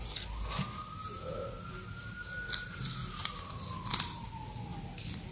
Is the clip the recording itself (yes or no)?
yes